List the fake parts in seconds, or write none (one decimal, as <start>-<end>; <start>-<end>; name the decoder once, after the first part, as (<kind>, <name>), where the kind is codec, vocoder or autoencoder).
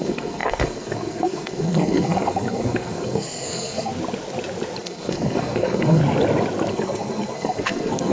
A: 0.0-3.9 (codec, SNAC); 4.8-6.0; 6.7-8.1